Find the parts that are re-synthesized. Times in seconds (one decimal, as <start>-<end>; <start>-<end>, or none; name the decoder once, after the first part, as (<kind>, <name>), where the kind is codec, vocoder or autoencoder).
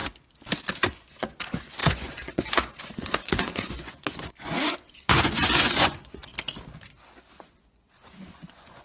0.9-6.3 (vocoder, Vocos); 7.3-8.8